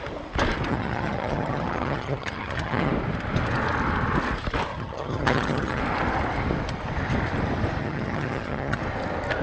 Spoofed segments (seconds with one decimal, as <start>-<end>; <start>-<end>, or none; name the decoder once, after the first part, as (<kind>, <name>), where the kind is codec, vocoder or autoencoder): 0.7-2.9 (vocoder, HiFi-GAN); 4.7-5.8; 7.8-8.8

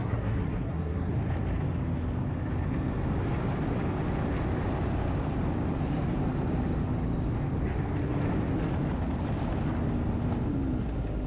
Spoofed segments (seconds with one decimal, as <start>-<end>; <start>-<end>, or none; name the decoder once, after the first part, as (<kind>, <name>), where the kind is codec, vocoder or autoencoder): 0.0-1.1 (codec, SNAC)

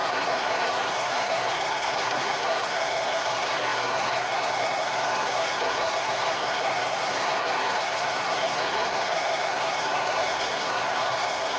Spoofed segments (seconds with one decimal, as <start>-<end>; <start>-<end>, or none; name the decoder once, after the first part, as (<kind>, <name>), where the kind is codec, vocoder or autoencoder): 0.0-11.6 (codec, SNAC)

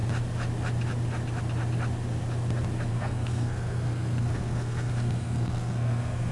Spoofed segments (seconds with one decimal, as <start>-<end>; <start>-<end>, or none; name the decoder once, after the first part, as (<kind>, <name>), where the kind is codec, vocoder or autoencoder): 2.9-6.3 (codec, SNAC)

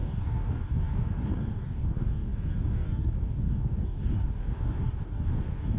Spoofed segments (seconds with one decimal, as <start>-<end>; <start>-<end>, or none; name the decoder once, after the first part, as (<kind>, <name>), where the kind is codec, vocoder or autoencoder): 0.0-5.8 (codec, DAC)

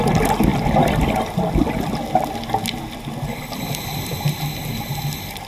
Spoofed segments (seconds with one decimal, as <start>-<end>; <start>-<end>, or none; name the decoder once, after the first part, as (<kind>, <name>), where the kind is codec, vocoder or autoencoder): none

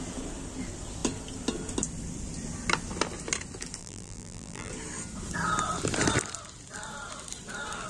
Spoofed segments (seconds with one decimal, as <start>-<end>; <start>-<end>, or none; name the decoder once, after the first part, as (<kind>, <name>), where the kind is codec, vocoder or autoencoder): 3.8-4.7 (vocoder, BigVGAN v2)